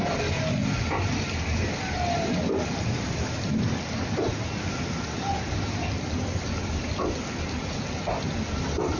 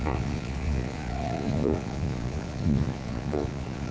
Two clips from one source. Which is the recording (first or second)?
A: first